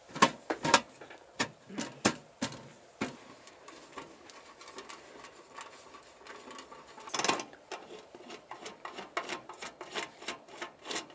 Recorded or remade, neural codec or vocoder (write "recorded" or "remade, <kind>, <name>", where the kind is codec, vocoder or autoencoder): recorded